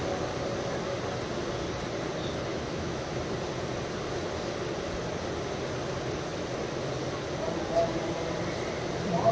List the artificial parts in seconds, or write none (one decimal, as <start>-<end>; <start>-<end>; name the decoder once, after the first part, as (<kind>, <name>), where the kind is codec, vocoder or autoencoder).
2.5-3.1 (autoencoder, DAC-VAE)